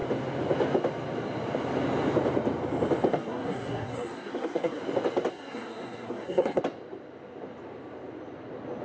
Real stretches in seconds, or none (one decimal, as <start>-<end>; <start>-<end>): 0.0-3.1; 4.8-5.3; 6.6-8.8